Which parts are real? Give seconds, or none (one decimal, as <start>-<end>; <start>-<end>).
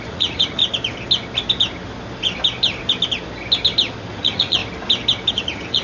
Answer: 0.6-4.1; 4.6-5.3